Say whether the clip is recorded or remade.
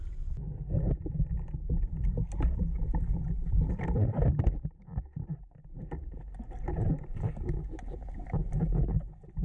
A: recorded